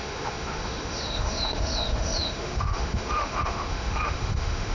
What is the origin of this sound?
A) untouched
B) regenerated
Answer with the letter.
B